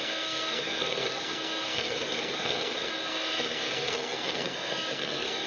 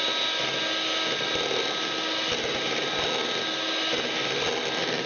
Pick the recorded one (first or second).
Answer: second